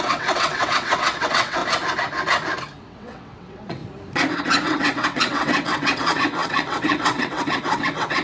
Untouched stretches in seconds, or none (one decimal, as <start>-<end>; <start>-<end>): 1.6-2.8; 3.8-4.4